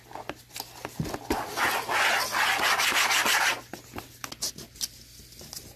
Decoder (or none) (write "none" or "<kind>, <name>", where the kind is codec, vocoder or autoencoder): none